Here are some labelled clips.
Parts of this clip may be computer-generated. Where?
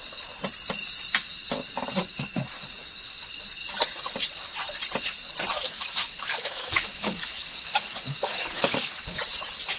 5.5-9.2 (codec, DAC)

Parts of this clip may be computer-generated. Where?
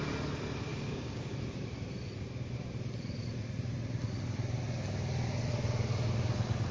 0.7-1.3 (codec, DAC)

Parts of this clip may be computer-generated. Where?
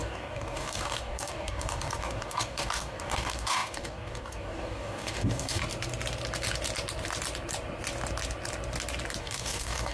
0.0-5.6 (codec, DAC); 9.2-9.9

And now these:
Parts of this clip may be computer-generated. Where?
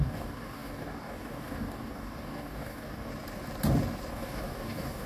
0.0-3.1 (codec, DAC); 4.1-5.1